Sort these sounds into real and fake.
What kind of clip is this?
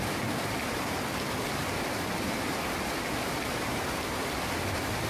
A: real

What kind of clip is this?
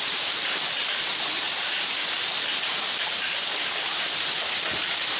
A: fake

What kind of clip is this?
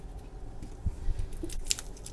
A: real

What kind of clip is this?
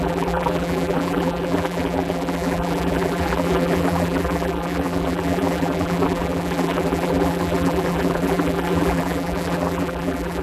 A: fake